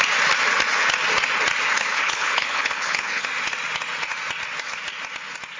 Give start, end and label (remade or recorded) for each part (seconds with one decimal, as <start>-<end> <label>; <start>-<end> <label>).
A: 0.0-1.9 recorded; 1.9-3.2 remade; 3.2-5.6 recorded